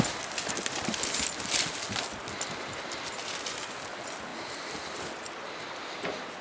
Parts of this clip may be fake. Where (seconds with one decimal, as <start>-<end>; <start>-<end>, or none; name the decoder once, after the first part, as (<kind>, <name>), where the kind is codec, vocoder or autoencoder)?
none